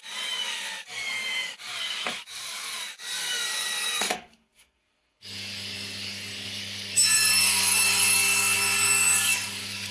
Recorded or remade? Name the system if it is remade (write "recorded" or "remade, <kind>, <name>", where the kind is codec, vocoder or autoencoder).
remade, codec, DAC